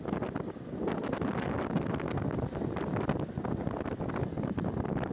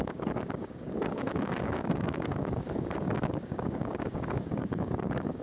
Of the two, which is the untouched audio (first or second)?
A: first